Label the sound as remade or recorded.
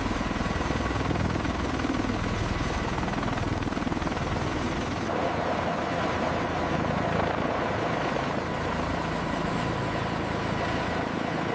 recorded